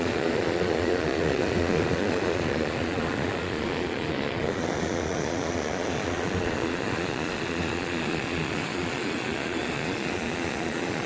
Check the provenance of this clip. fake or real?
fake